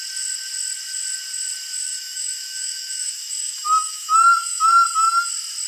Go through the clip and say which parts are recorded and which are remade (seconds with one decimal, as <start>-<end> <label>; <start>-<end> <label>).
0.0-1.9 recorded; 1.9-5.3 remade; 5.3-5.7 recorded